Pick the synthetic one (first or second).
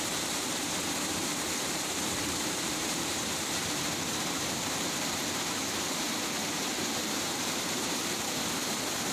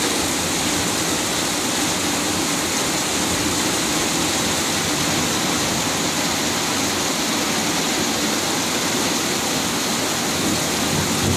first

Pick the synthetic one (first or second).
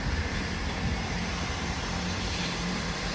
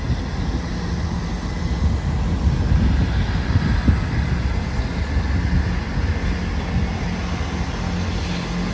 first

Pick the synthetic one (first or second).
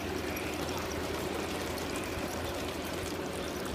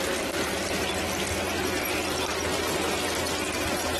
first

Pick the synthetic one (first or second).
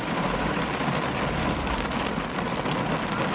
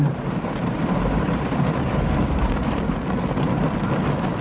second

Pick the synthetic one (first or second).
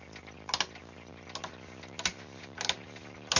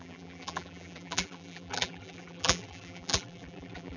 second